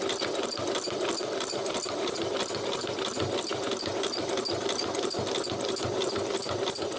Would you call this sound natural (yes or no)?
yes